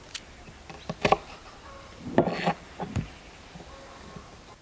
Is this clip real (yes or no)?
yes